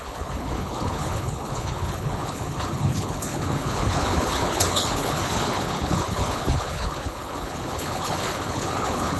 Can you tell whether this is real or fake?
fake